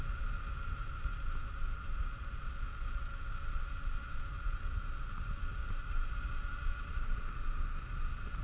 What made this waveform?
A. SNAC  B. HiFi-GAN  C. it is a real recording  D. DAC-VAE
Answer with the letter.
C